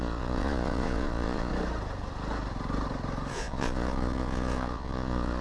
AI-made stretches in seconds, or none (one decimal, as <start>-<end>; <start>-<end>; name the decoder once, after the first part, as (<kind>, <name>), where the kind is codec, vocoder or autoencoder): 0.0-1.5 (vocoder, Vocos); 3.3-5.4